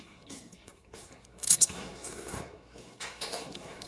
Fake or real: fake